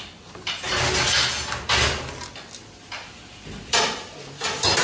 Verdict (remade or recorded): recorded